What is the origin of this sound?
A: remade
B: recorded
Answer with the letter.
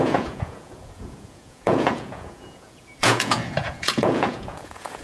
A